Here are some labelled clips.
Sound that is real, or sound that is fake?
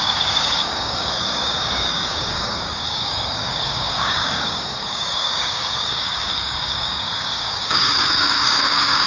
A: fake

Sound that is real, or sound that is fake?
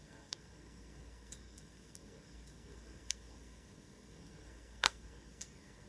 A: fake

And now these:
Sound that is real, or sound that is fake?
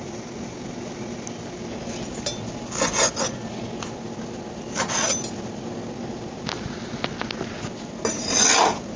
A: real